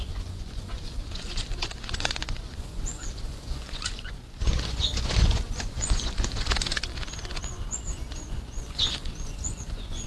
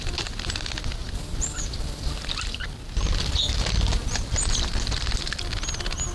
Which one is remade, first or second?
first